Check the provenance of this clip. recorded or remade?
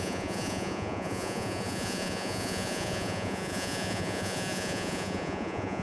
remade